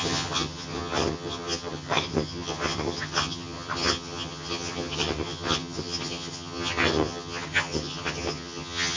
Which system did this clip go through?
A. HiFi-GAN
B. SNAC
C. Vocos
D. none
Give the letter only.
A